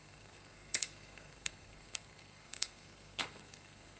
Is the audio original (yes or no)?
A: no